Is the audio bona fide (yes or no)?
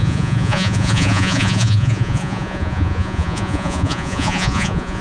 no